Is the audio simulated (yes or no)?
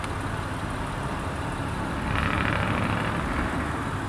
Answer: no